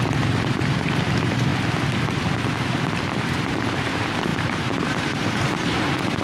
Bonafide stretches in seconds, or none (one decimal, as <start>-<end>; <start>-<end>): 1.5-3.1